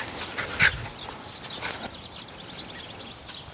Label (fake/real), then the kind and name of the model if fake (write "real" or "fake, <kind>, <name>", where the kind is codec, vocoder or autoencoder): real